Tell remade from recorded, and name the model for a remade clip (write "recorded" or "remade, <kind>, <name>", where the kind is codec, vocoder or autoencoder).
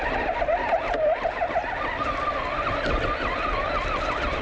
recorded